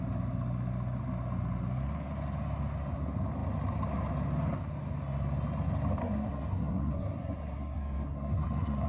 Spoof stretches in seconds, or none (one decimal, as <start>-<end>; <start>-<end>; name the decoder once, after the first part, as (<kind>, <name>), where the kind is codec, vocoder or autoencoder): 6.0-8.9 (codec, SNAC)